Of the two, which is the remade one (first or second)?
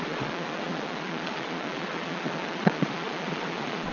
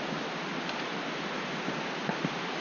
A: first